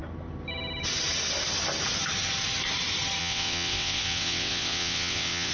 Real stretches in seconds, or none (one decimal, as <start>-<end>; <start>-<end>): 0.0-3.2